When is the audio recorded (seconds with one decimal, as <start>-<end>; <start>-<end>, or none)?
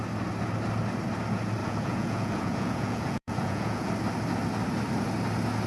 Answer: 0.0-1.6; 3.9-5.7